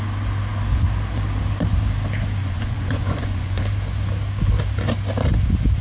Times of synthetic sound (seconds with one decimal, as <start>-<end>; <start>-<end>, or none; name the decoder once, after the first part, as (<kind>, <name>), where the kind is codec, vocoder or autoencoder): 2.4-3.6 (vocoder, Vocos)